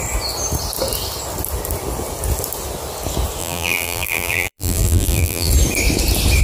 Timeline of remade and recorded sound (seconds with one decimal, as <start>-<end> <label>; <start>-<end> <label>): 0.0-3.4 recorded; 3.4-5.5 remade; 5.5-6.4 recorded